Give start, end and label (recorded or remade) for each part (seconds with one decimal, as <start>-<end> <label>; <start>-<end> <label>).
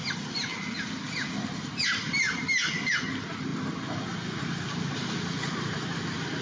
0.0-6.4 recorded